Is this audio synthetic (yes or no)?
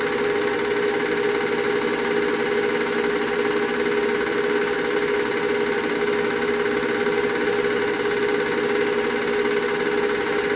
no